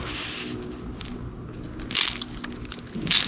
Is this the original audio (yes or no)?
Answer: yes